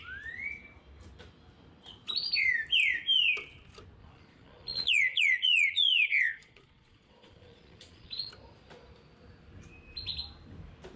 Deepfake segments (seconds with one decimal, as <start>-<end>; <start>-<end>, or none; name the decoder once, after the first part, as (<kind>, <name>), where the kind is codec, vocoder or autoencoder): 4.0-8.3 (vocoder, Vocos)